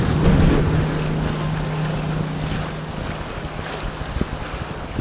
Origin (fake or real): real